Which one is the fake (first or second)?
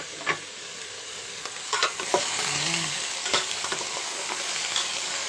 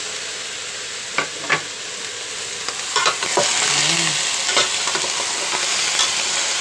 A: first